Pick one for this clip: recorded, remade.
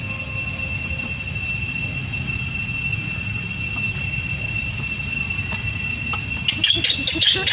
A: recorded